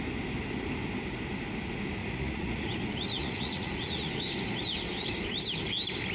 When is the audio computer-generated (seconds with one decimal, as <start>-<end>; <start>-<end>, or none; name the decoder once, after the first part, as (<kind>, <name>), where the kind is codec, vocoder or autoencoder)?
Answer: 2.0-2.7 (vocoder, Vocos); 3.2-4.1